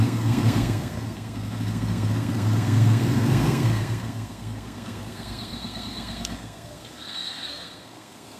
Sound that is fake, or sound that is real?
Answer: fake